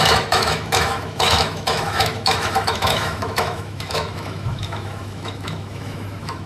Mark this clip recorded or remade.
remade